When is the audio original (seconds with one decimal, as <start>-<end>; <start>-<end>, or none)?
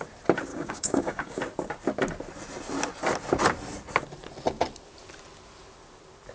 0.0-0.5; 1.4-6.3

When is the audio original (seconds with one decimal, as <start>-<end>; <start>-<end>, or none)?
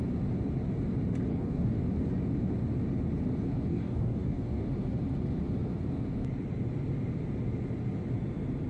0.0-1.3; 1.8-3.7; 4.7-8.7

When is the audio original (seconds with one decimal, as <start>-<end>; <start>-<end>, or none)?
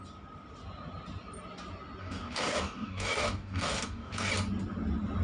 0.0-2.0; 4.3-5.2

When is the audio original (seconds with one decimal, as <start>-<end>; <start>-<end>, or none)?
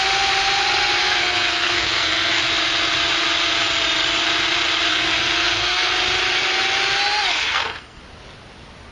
0.0-1.0; 2.4-4.9; 5.9-7.3; 8.0-8.9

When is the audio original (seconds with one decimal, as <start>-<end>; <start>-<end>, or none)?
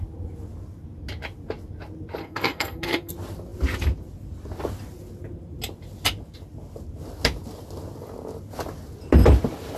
0.0-2.2; 3.1-9.8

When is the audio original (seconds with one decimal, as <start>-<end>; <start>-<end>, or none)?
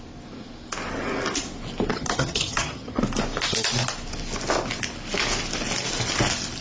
0.0-1.9; 3.0-6.6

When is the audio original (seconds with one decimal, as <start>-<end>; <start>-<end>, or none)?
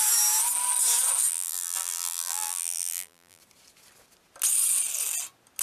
0.0-1.3; 3.4-5.6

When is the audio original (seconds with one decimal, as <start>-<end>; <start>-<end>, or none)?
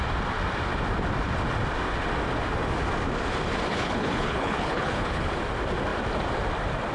0.0-3.7; 5.3-6.9